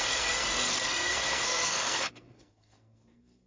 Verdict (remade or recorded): remade